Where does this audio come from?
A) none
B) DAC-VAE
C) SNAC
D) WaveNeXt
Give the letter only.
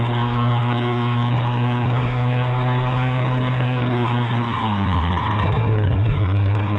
C